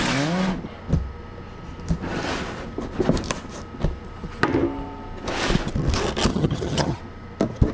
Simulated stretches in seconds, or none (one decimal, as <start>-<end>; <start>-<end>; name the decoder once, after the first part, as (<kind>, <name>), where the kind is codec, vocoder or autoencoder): 6.3-7.0 (vocoder, HiFi-GAN)